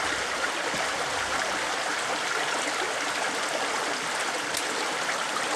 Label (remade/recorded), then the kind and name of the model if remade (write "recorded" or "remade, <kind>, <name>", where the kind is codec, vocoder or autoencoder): recorded